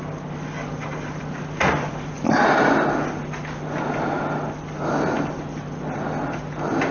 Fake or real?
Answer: real